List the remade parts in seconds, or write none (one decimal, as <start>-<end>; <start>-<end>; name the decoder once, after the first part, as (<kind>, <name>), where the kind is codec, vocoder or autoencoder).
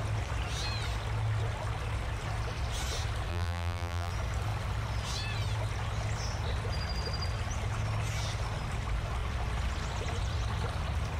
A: 3.3-4.1 (vocoder, BigVGAN v2)